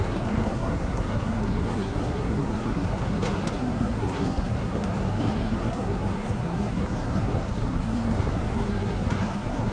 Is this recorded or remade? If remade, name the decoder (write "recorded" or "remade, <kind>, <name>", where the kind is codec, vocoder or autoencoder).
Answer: remade, codec, SNAC